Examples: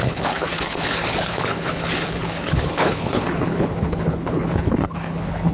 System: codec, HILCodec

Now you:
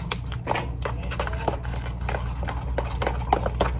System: none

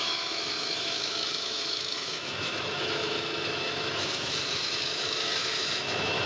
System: autoencoder, DAC-VAE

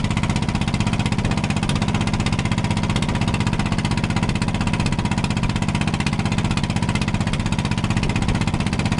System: none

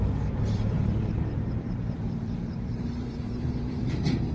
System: vocoder, BigVGAN v2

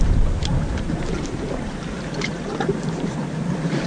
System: vocoder, BigVGAN v2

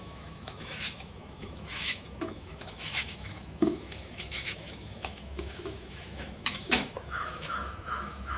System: autoencoder, DAC-VAE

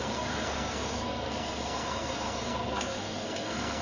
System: codec, SNAC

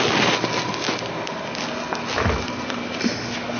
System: none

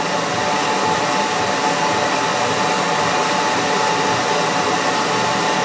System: none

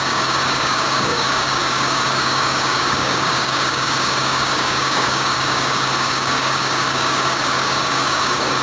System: codec, DAC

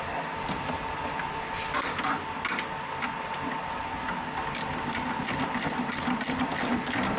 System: none